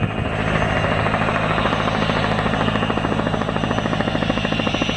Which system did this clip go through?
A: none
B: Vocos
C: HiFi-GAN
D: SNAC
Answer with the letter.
A